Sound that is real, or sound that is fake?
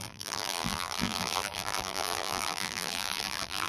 fake